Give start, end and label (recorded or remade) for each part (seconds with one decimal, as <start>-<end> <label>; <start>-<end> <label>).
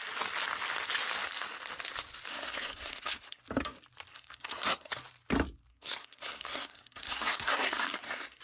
0.0-2.3 recorded; 2.3-3.4 remade; 3.4-4.1 recorded; 4.1-4.9 remade; 4.9-5.7 recorded; 5.7-8.4 remade